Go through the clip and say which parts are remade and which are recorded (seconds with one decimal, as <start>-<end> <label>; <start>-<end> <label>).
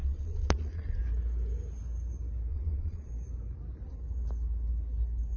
0.0-1.0 remade; 1.0-2.5 recorded; 2.5-3.1 remade; 3.1-5.4 recorded